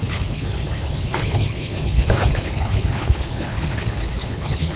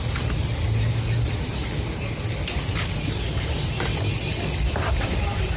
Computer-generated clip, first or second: first